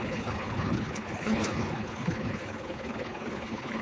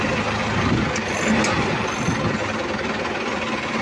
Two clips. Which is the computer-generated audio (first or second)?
first